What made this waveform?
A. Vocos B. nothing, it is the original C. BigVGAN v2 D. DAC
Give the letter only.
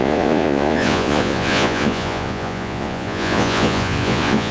A